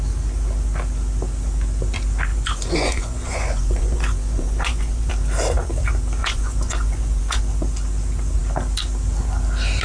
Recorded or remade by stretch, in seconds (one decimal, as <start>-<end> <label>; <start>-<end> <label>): 0.0-2.3 recorded; 2.3-5.1 remade; 5.1-6.2 recorded; 6.2-7.4 remade; 7.4-9.8 recorded